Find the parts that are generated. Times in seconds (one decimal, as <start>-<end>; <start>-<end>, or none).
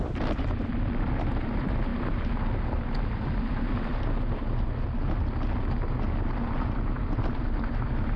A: 0.0-1.9; 6.6-8.2